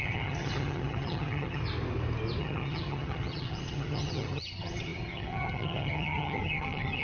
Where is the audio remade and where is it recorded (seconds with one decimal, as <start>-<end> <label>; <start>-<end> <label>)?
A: 0.0-1.6 remade; 1.6-2.4 recorded; 2.4-7.0 remade